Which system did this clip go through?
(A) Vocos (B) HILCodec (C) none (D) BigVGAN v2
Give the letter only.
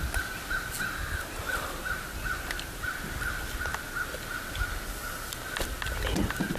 C